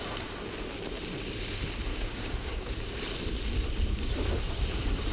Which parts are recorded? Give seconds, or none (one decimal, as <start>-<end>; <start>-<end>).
0.0-1.9; 2.7-5.1